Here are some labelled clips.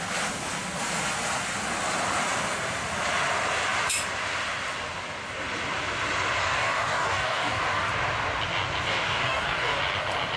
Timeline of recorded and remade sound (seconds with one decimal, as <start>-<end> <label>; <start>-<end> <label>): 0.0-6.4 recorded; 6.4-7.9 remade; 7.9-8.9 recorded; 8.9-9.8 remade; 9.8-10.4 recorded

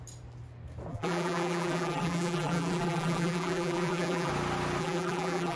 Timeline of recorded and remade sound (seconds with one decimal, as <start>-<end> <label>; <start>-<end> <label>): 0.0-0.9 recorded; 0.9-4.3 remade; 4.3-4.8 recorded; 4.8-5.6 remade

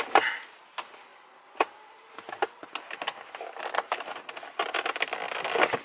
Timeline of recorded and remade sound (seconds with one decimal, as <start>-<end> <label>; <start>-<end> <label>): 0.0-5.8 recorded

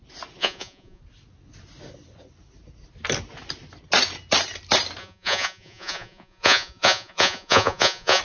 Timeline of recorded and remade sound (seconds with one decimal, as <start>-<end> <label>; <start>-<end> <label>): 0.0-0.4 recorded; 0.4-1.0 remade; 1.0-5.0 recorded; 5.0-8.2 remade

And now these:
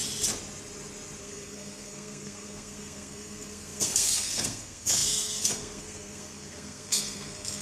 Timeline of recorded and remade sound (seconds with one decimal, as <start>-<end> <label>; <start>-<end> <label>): 0.0-1.2 recorded; 1.2-7.6 remade